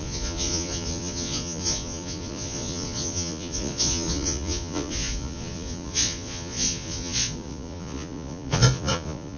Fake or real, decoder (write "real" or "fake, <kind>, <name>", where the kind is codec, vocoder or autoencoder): fake, vocoder, Vocos